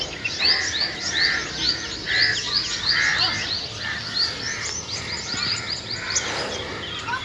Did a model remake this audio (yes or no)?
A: no